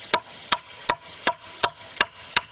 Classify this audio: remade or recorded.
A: remade